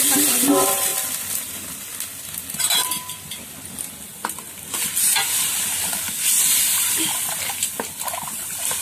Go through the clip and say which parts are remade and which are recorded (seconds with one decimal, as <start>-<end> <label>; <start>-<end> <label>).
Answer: 0.0-0.9 remade; 0.9-6.0 recorded; 6.0-8.8 remade